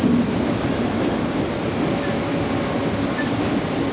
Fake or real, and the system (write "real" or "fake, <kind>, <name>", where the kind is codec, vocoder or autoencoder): real